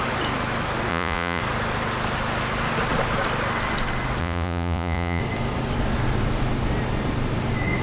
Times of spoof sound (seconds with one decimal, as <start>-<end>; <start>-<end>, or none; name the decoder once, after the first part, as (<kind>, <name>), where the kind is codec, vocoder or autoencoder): 0.9-1.4 (vocoder, Vocos); 4.2-5.2